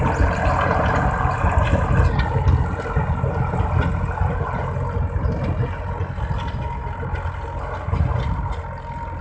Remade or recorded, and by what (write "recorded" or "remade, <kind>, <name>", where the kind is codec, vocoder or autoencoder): recorded